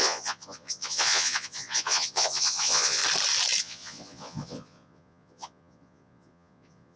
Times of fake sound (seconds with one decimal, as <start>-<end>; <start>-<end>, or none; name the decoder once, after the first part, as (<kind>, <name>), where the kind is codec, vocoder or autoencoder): 0.0-3.0 (vocoder, Vocos); 3.6-7.0